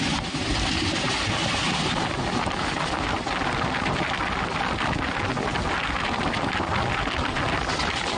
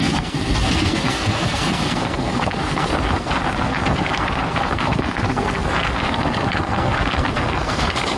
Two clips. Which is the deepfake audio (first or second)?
second